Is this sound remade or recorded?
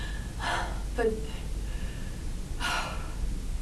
recorded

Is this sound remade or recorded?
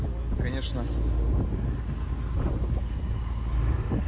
recorded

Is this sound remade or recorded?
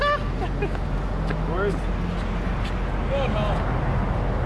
recorded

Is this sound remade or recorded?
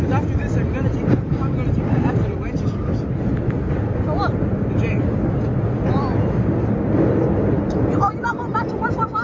recorded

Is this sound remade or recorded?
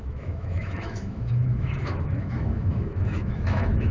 remade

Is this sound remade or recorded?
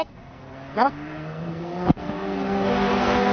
remade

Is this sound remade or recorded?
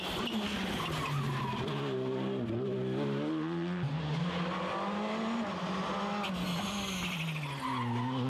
recorded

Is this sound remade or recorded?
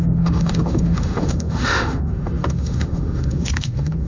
remade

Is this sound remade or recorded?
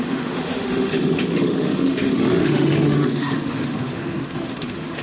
remade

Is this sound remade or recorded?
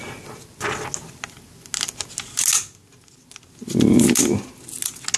recorded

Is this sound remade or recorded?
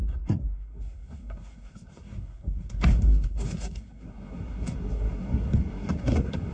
remade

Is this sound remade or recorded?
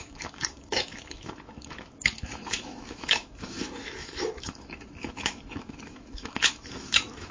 remade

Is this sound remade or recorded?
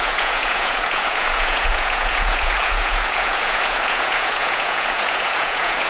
remade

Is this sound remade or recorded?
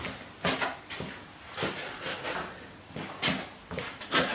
recorded